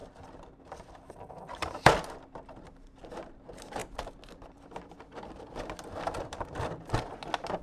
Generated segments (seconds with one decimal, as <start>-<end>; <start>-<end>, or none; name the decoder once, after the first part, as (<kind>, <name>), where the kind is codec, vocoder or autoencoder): none